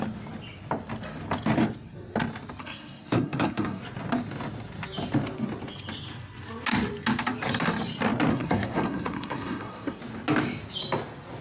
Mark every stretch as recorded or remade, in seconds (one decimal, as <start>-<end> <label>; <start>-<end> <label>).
0.0-2.6 recorded; 2.6-3.8 remade; 3.8-8.3 recorded; 8.3-10.0 remade; 10.0-11.4 recorded